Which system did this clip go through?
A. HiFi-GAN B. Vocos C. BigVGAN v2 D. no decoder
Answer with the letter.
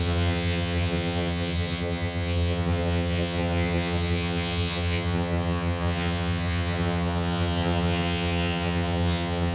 A